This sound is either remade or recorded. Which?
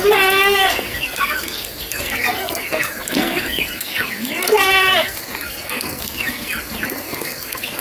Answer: remade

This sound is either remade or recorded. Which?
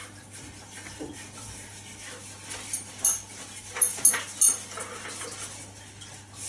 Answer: recorded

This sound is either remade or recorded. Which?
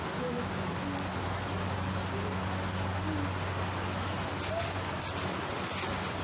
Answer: recorded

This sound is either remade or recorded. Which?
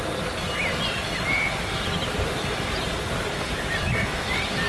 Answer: recorded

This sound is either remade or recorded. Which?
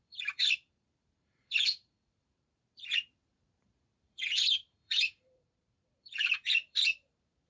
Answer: remade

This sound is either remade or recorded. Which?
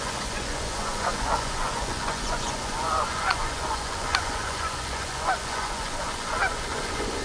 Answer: remade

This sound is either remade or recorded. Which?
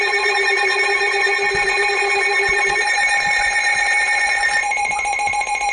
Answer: remade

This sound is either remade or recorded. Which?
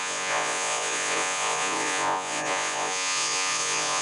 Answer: remade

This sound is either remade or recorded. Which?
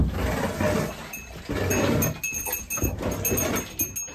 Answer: recorded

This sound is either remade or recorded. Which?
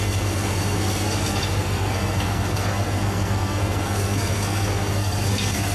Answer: remade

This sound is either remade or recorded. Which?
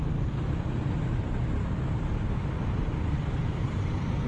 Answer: recorded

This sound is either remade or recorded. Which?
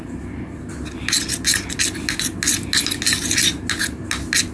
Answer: recorded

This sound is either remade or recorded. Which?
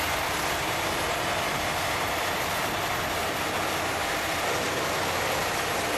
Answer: recorded